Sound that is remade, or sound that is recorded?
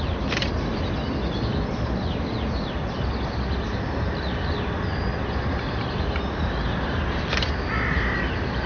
recorded